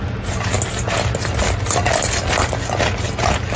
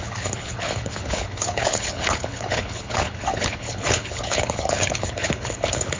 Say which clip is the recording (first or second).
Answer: first